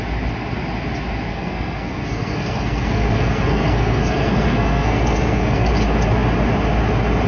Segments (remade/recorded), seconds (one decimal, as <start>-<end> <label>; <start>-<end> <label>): 0.0-1.3 recorded; 1.3-5.7 remade; 5.7-7.3 recorded